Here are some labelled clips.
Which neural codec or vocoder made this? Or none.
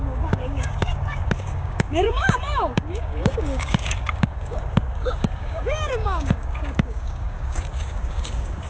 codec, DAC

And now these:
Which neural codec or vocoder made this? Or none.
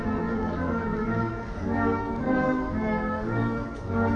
codec, DAC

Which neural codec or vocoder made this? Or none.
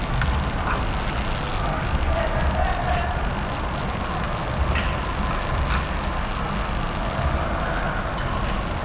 none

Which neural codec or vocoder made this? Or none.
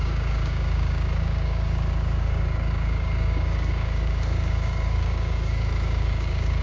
codec, DAC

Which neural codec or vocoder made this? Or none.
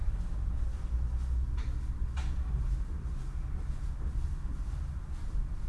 none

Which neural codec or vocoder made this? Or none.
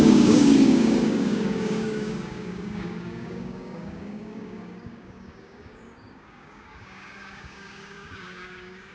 codec, DAC